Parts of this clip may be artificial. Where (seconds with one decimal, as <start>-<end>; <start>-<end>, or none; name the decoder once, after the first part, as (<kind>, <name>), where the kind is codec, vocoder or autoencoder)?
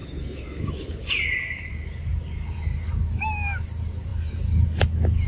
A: 0.0-0.9 (autoencoder, DAC-VAE)